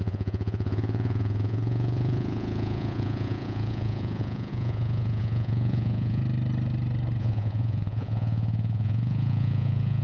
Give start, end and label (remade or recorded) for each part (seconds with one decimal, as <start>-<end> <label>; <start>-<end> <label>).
0.0-6.2 remade; 6.2-7.2 recorded; 7.2-10.0 remade